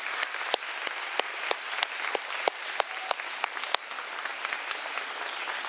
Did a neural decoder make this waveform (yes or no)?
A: no